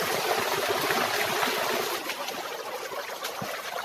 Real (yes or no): yes